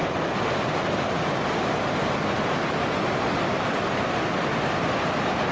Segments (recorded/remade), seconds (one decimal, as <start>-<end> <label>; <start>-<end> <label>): 0.0-5.5 recorded